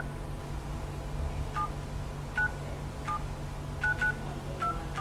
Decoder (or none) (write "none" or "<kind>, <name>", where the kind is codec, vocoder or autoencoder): none